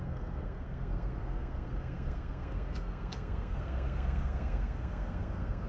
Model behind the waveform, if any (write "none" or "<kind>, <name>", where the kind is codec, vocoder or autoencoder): codec, SNAC